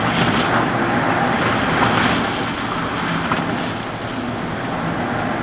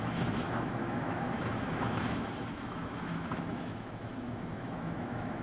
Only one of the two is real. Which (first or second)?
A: first